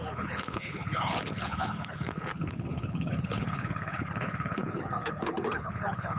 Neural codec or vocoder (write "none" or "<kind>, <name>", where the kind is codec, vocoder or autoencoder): codec, HILCodec